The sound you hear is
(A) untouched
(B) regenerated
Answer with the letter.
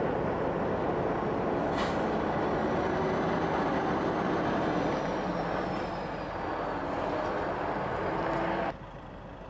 A